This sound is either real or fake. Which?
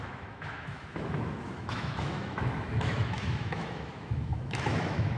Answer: fake